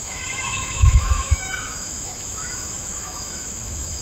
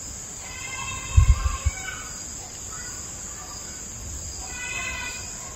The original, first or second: second